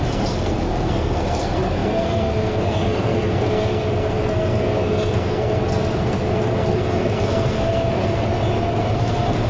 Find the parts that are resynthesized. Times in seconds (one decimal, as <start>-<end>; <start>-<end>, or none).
0.0-8.2; 8.8-9.5